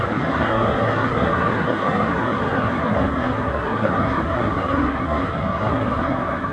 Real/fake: fake